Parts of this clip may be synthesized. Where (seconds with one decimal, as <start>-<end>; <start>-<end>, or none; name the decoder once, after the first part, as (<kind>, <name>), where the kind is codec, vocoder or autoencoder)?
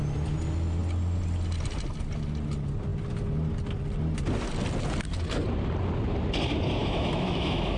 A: 6.8-7.8 (autoencoder, DAC-VAE)